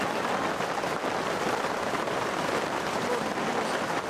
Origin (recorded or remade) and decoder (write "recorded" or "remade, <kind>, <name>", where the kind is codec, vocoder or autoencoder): recorded